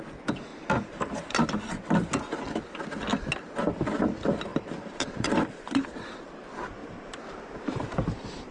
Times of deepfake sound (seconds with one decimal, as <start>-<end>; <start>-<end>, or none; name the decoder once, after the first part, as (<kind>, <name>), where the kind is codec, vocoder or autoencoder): 4.5-6.3 (vocoder, BigVGAN v2); 6.8-8.5